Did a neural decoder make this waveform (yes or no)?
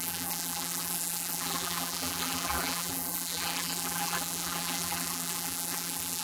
yes